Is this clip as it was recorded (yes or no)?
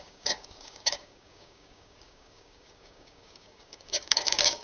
no